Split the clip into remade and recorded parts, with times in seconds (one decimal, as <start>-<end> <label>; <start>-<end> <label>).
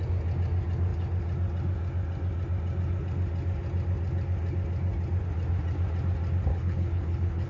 0.0-6.5 recorded; 6.5-7.5 remade